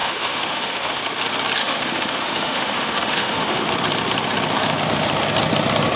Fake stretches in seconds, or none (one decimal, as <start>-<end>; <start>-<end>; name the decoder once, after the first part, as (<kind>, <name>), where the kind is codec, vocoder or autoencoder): 0.0-1.0 (autoencoder, DAC-VAE); 1.6-3.7